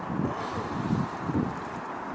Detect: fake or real real